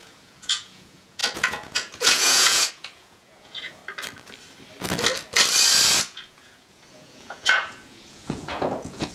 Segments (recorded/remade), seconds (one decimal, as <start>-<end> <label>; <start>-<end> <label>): 0.0-3.8 remade; 3.8-6.0 recorded; 6.0-9.1 remade